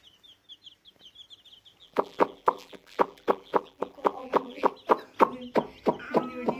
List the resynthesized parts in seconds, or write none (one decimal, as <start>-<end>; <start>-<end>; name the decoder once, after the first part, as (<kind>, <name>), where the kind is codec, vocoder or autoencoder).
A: 1.8-4.7 (vocoder, BigVGAN v2)